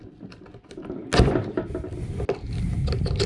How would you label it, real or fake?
real